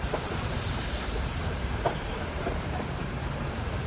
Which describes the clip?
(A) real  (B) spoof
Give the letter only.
B